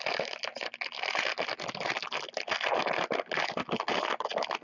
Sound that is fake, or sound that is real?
real